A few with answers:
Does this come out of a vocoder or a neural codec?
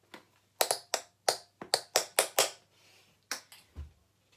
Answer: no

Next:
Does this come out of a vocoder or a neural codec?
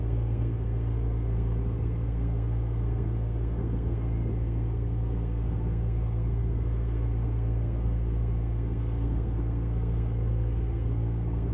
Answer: yes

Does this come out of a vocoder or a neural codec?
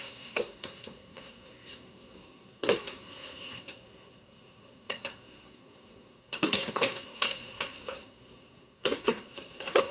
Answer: yes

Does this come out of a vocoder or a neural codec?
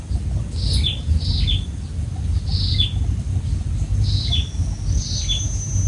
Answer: no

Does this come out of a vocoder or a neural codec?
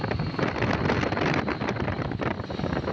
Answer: no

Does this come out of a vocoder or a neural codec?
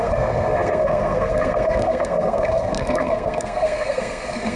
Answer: yes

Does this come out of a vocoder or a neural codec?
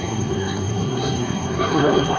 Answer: yes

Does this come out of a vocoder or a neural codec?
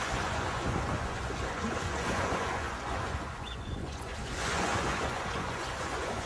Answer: yes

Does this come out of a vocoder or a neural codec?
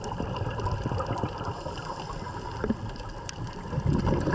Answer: yes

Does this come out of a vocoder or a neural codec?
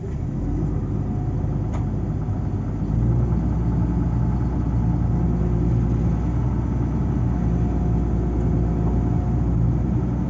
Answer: no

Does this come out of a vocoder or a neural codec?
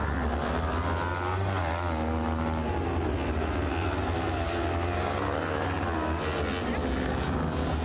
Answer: no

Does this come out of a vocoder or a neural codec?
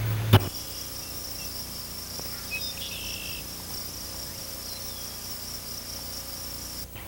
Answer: no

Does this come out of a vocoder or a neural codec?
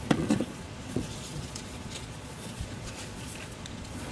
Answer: yes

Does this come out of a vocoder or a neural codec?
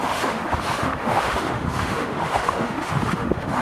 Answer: yes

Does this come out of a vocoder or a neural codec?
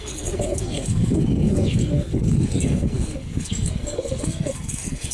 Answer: yes